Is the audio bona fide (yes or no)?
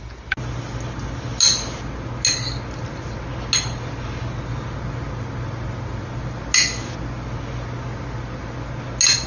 yes